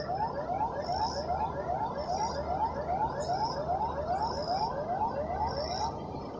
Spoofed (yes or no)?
no